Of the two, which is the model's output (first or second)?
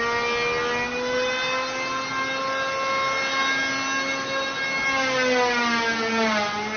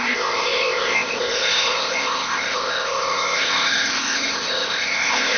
second